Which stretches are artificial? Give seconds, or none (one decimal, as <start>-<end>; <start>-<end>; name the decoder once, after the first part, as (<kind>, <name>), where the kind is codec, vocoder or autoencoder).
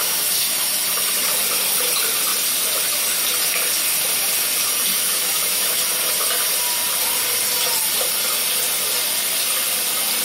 0.0-0.8 (autoencoder, DAC-VAE); 4.9-5.8